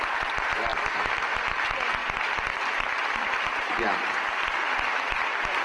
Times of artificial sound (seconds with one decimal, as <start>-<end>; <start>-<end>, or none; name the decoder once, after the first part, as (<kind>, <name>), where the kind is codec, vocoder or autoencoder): none